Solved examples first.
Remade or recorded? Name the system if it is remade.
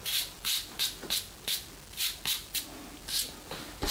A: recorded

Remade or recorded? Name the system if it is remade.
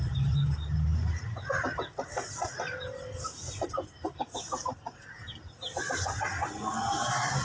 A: recorded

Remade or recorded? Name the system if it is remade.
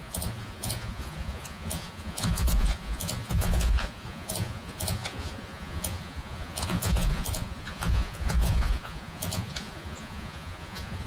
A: remade, vocoder, Vocos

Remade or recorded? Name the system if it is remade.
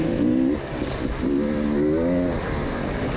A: recorded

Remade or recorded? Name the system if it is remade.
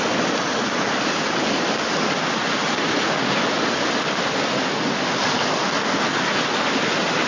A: recorded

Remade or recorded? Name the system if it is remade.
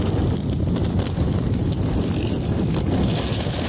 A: recorded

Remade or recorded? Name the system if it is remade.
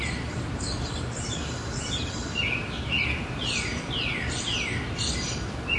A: remade, vocoder, BigVGAN v2